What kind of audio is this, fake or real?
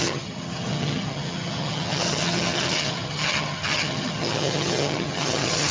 fake